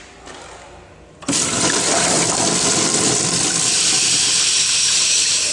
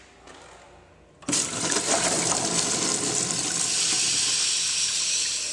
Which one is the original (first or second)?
second